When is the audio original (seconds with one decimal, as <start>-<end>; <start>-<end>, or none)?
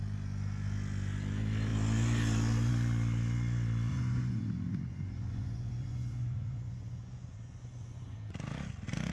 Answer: 0.0-3.9; 8.2-9.1